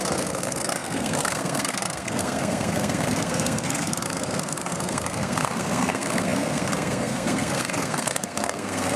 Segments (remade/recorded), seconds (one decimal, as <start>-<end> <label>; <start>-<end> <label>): 0.0-9.0 remade

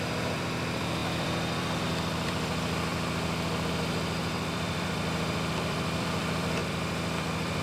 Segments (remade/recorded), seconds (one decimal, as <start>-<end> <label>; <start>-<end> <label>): 0.0-2.9 remade; 2.9-3.7 recorded; 3.7-7.6 remade

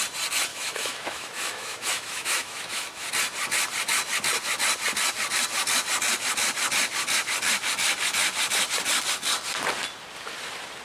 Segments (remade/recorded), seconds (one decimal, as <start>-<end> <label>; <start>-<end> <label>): 0.0-0.5 recorded; 0.5-3.1 remade; 3.1-10.8 recorded

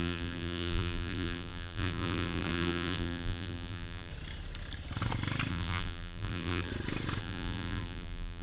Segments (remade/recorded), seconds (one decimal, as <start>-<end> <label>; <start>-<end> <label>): 0.0-4.1 remade; 4.1-5.5 recorded; 5.5-6.7 remade; 6.7-7.2 recorded; 7.2-8.4 remade

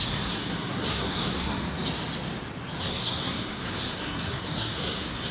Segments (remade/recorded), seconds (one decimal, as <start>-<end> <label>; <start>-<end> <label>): 0.0-1.6 remade; 1.6-2.8 recorded; 2.8-5.3 remade

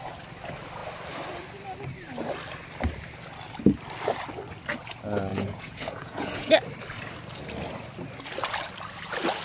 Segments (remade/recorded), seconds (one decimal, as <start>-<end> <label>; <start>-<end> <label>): 0.0-5.3 recorded; 5.3-6.5 remade; 6.5-9.4 recorded

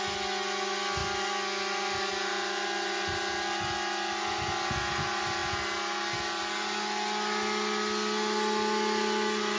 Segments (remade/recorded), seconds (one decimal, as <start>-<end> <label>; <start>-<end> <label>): 0.0-9.6 recorded